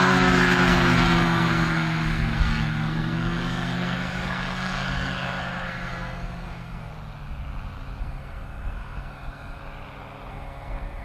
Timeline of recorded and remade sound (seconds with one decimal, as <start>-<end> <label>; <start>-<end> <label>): 0.0-6.9 remade; 6.9-8.0 recorded; 8.0-9.6 remade; 9.6-10.3 recorded; 10.3-11.0 remade